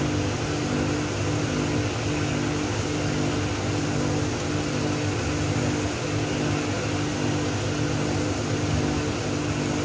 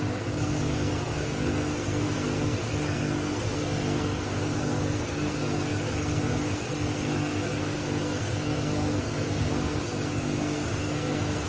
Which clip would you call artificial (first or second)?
second